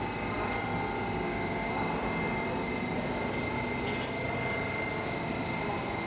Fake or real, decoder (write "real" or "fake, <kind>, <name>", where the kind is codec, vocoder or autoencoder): real